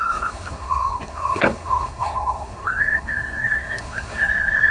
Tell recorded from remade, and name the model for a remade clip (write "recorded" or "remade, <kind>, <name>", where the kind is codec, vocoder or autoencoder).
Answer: remade, codec, SNAC